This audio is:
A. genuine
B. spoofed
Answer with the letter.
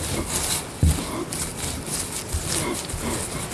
A